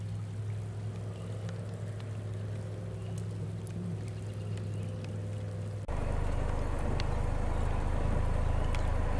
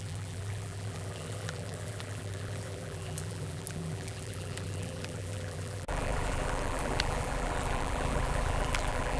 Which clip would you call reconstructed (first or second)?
second